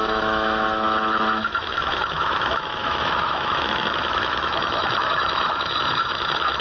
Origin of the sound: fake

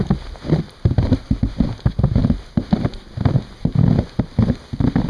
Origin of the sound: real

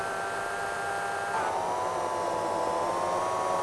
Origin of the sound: real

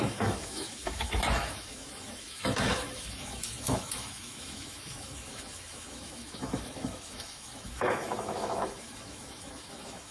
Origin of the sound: fake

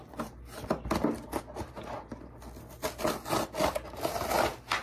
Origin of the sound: real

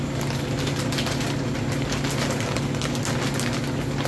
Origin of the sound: real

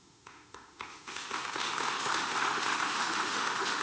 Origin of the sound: fake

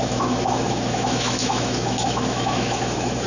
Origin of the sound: fake